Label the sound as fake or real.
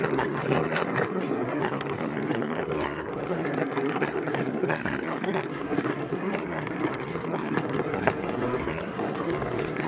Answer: fake